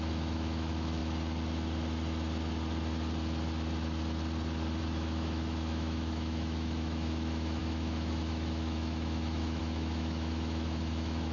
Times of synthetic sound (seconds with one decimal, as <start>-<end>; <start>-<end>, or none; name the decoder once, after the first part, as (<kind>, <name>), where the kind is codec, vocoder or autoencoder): 0.0-1.0 (autoencoder, DAC-VAE); 4.8-11.3